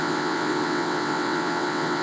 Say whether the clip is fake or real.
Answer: fake